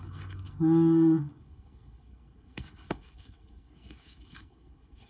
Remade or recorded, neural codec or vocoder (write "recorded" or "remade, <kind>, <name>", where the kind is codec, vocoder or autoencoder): remade, codec, SNAC